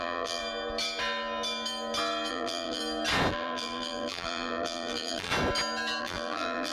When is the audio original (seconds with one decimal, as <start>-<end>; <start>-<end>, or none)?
0.4-2.3; 2.8-3.3; 5.3-6.0